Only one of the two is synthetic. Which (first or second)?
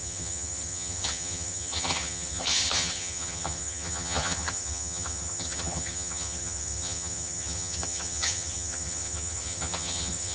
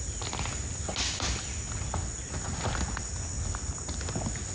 first